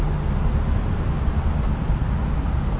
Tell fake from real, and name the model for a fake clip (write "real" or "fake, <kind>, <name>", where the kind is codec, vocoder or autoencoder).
real